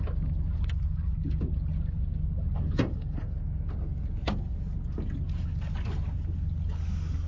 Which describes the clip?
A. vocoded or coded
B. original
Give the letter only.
B